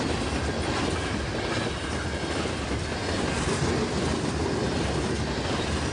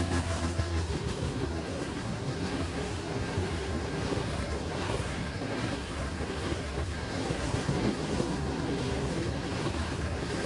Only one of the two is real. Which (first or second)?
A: first